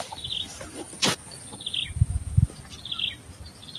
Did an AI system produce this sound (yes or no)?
no